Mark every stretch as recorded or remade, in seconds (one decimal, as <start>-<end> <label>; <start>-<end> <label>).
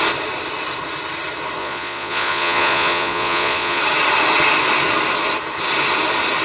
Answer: 0.0-1.6 recorded; 1.6-3.8 remade; 3.8-6.4 recorded